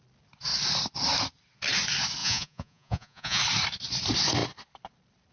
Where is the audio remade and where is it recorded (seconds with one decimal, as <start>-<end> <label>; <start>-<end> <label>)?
0.0-2.2 recorded; 2.2-3.4 remade; 3.4-5.3 recorded